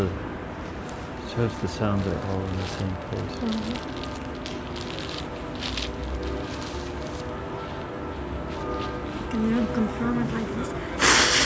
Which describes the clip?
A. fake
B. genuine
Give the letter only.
B